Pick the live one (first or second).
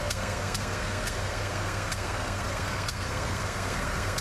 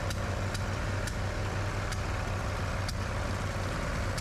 second